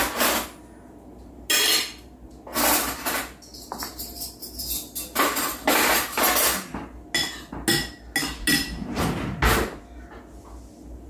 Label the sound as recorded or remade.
recorded